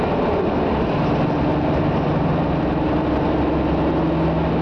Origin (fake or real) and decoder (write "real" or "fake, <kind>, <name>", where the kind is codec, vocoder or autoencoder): real